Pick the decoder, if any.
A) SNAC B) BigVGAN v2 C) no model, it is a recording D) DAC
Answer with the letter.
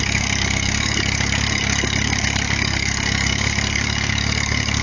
D